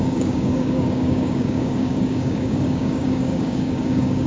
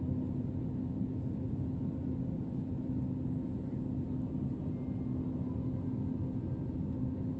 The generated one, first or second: first